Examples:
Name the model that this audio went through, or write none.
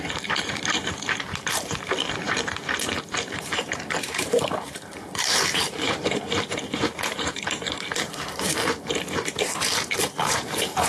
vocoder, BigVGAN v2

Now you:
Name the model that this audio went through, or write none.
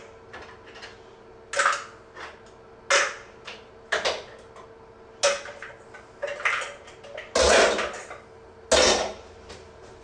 none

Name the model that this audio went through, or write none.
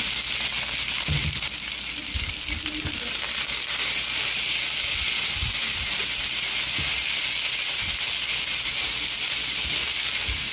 none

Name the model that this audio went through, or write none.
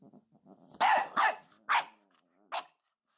none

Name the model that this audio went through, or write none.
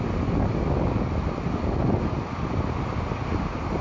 none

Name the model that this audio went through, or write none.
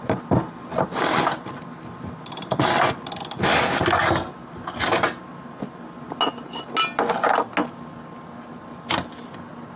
none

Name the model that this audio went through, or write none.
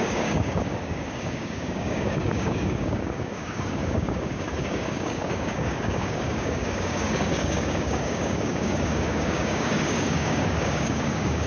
codec, DAC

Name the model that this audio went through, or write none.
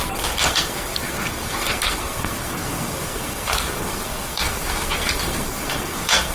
codec, SNAC